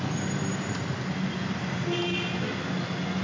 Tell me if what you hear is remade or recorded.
recorded